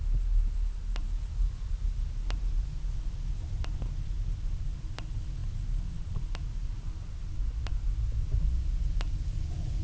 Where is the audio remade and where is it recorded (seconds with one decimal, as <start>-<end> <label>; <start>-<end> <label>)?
0.0-9.8 recorded